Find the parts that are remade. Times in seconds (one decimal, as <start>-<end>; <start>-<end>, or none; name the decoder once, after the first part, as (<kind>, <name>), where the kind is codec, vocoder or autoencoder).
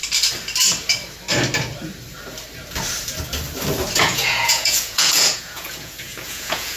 4.0-6.8 (vocoder, Vocos)